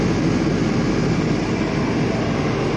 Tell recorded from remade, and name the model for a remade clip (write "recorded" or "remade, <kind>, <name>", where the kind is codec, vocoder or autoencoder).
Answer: recorded